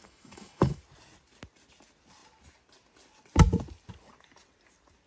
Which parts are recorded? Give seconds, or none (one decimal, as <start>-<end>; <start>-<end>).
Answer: 0.8-5.1